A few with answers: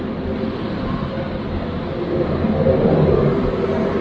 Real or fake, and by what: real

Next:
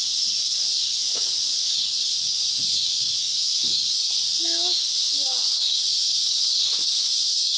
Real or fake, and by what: fake, codec, DAC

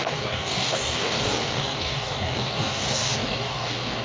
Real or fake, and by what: fake, codec, DAC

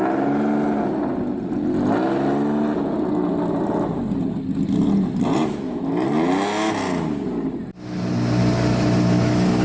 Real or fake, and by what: real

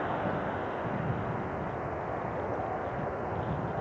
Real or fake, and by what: real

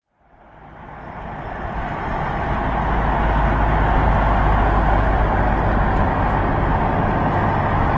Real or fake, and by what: real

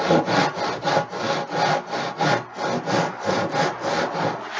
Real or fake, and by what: real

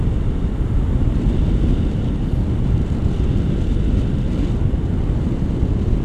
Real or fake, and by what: real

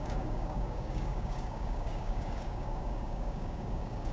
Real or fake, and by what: fake, codec, DAC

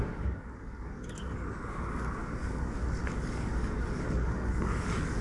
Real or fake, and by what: fake, codec, DAC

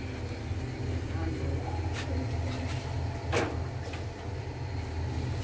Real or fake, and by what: real